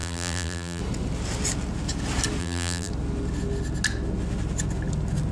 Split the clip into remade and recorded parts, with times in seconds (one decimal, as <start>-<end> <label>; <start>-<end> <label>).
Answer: 0.0-0.8 remade; 0.8-2.4 recorded; 2.4-2.9 remade; 2.9-5.3 recorded